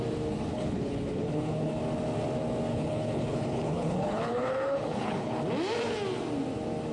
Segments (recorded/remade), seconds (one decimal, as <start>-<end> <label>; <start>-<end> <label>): 0.0-0.5 recorded; 0.5-1.8 remade; 1.8-2.7 recorded; 2.7-5.4 remade; 5.4-6.9 recorded